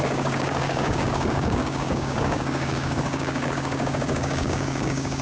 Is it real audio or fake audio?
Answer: fake